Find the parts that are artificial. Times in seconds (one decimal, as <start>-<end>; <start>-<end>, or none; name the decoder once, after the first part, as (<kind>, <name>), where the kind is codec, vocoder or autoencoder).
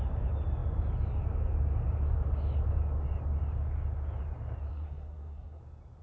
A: 4.7-5.6 (codec, SNAC)